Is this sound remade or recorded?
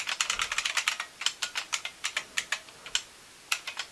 recorded